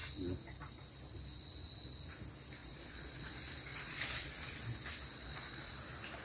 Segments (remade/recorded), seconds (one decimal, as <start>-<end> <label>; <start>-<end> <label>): 0.0-2.6 recorded; 2.6-3.3 remade; 3.3-3.7 recorded; 3.7-4.6 remade; 4.6-5.1 recorded; 5.1-5.7 remade; 5.7-6.2 recorded

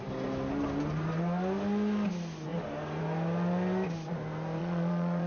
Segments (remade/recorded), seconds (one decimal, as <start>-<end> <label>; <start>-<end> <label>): 0.0-4.6 recorded; 4.6-5.3 remade

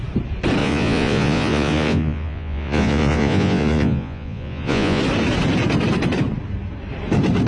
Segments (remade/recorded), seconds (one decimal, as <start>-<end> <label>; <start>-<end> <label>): 0.0-0.6 recorded; 0.6-5.0 remade; 5.0-7.5 recorded

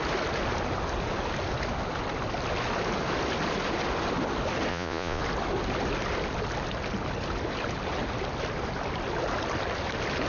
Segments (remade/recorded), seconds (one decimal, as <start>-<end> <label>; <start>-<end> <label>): 0.0-4.7 recorded; 4.7-5.2 remade; 5.2-10.3 recorded

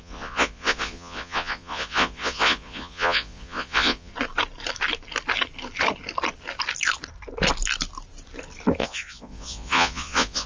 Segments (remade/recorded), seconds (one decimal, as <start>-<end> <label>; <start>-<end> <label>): 0.0-4.1 remade; 4.1-8.8 recorded; 8.8-10.5 remade

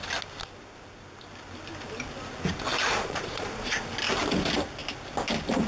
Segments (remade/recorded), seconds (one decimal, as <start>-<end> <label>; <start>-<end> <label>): 0.0-2.9 recorded; 2.9-3.9 remade; 3.9-5.7 recorded